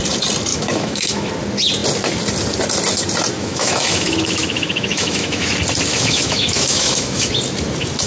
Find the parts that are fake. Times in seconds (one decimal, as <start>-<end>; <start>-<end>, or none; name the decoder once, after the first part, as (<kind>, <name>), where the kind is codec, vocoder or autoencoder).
0.5-1.3 (autoencoder, DAC-VAE); 3.4-5.5; 5.9-7.3